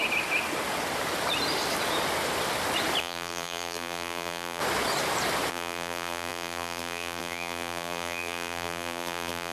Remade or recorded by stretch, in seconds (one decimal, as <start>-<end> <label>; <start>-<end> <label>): 0.0-3.0 recorded; 3.0-4.6 remade; 4.6-5.5 recorded; 5.5-9.5 remade